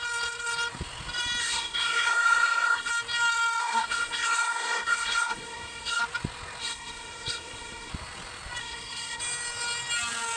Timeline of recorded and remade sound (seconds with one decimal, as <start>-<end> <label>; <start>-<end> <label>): 0.0-1.4 recorded; 1.4-2.9 remade; 2.9-3.6 recorded; 3.6-6.0 remade; 6.0-6.6 recorded; 6.6-7.9 remade; 7.9-8.6 recorded; 8.6-9.2 remade; 9.2-10.4 recorded